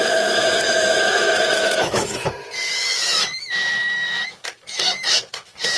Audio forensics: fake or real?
fake